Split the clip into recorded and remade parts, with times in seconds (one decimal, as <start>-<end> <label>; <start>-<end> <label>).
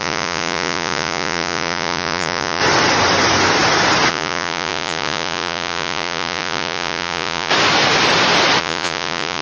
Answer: 0.0-2.6 remade; 2.6-4.1 recorded; 4.1-7.5 remade; 7.5-8.6 recorded; 8.6-9.4 remade